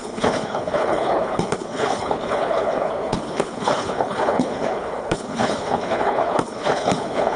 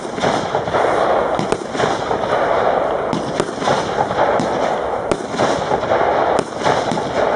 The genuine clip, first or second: second